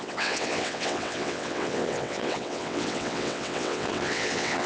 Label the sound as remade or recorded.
remade